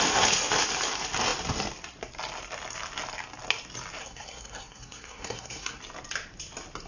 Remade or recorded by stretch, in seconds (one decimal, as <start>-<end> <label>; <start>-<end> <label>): 0.0-4.0 recorded; 4.0-5.8 remade; 5.8-6.9 recorded